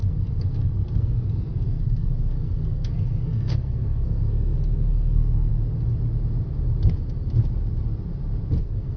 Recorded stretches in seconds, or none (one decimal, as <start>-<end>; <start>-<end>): 5.5-8.6